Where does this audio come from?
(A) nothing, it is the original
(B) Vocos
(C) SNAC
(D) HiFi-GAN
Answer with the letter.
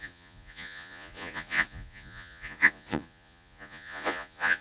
B